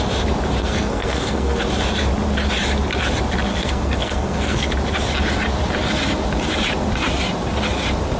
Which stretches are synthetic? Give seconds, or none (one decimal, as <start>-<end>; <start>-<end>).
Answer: 0.6-1.6; 3.5-4.7